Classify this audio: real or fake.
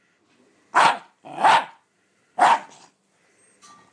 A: real